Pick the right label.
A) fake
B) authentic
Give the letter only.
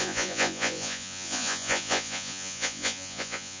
A